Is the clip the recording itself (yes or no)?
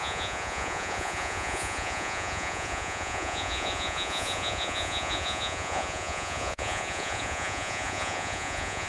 no